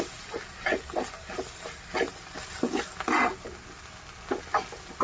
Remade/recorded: recorded